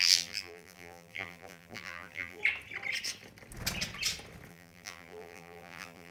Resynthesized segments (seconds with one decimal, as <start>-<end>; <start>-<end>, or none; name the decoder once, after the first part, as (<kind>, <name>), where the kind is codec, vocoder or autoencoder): 0.0-2.4 (vocoder, BigVGAN v2); 4.5-6.1